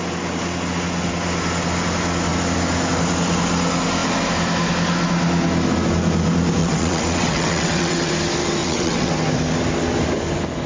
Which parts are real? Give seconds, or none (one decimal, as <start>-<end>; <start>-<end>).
0.0-6.6; 8.1-8.6; 9.1-10.7